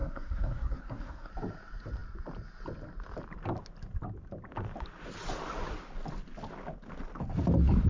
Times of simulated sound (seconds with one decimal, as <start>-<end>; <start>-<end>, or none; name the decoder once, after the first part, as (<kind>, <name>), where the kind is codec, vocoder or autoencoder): 0.0-1.3 (codec, SNAC)